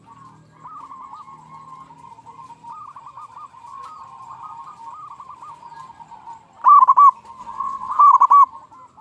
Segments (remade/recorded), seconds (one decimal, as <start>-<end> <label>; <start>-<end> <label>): 0.0-7.4 recorded; 7.4-8.0 remade; 8.0-9.0 recorded